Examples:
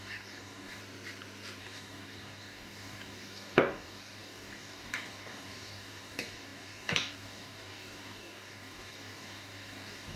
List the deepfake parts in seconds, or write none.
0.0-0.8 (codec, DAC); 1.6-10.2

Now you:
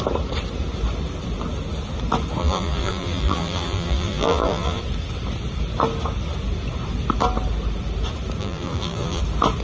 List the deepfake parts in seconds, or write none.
2.4-4.8 (vocoder, BigVGAN v2); 8.4-9.2